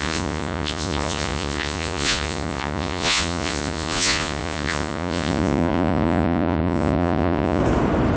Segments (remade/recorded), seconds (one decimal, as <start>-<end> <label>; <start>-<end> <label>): 0.0-7.6 remade; 7.6-8.2 recorded